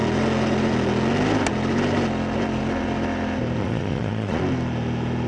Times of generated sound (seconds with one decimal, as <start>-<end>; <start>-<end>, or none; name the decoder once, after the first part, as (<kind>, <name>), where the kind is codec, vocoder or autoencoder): 3.6-4.4 (vocoder, Vocos)